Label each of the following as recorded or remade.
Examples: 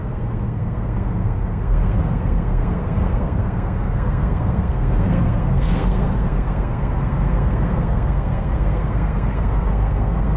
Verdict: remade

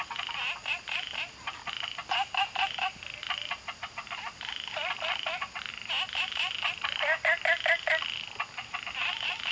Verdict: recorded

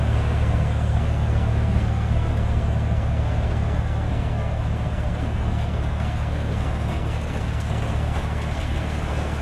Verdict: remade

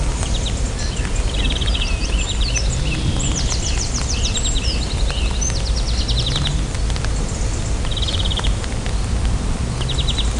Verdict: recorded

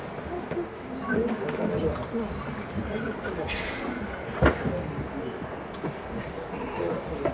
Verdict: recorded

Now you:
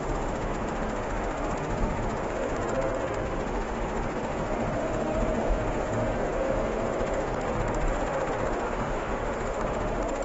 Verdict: remade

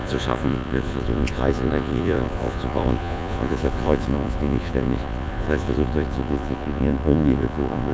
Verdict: remade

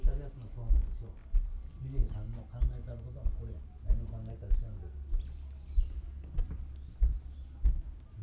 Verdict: recorded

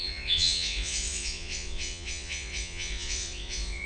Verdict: remade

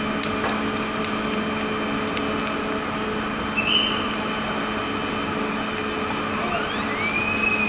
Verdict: recorded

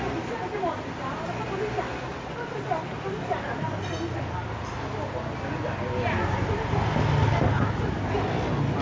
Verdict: recorded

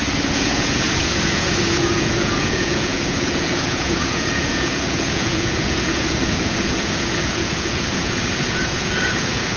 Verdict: remade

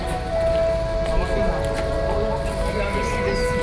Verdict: recorded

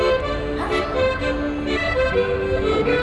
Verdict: recorded